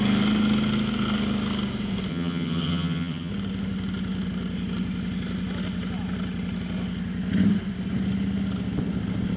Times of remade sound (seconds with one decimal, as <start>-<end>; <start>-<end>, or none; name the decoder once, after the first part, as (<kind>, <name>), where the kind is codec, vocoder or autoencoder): 2.1-3.3 (vocoder, HiFi-GAN)